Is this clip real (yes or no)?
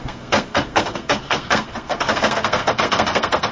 no